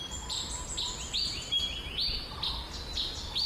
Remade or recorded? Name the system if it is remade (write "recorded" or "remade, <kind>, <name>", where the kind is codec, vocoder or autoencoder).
recorded